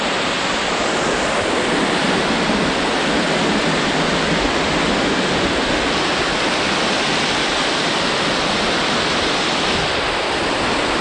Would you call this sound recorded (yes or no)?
yes